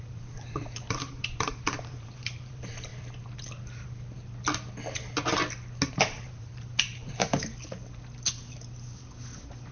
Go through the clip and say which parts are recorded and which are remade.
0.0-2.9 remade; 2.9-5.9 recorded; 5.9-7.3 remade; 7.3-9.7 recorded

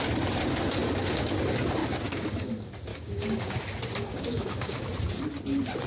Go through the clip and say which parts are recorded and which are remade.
0.0-1.8 recorded; 1.8-2.5 remade; 2.5-2.9 recorded; 2.9-3.6 remade; 3.6-4.1 recorded; 4.1-4.8 remade; 4.8-5.9 recorded

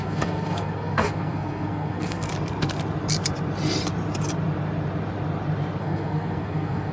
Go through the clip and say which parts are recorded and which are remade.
0.0-2.3 remade; 2.3-5.8 recorded; 5.8-6.9 remade

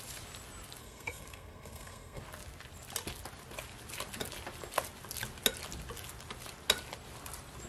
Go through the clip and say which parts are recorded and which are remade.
0.0-0.8 recorded; 0.8-2.2 remade; 2.2-7.7 recorded

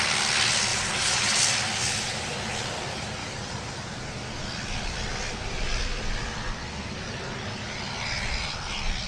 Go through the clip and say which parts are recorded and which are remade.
0.0-0.7 recorded; 0.7-1.4 remade; 1.4-3.2 recorded; 3.2-3.9 remade; 3.9-9.1 recorded